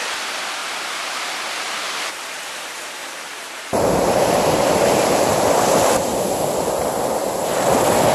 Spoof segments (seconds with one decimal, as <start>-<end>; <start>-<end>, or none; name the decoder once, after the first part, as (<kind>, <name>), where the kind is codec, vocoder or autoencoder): 0.6-2.1 (vocoder, BigVGAN v2); 3.0-6.2

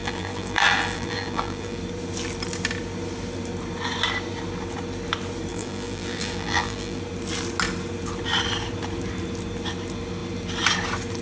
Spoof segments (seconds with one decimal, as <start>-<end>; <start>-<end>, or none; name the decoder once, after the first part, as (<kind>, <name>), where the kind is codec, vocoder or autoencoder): 0.0-1.8 (vocoder, BigVGAN v2); 5.5-7.0

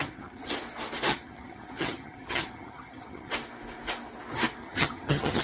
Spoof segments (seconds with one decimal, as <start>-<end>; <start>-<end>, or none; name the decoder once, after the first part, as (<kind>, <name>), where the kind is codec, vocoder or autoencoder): 0.0-0.5 (vocoder, HiFi-GAN); 1.1-3.3; 4.6-5.4

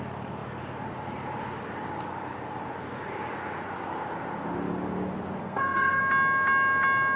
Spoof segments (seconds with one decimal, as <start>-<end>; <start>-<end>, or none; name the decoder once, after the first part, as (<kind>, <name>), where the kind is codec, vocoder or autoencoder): 5.4-6.0 (codec, SNAC)

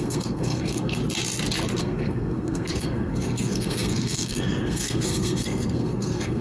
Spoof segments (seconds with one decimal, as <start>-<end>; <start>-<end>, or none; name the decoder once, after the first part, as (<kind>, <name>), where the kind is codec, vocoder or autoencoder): 0.0-1.0 (codec, SNAC); 1.8-6.4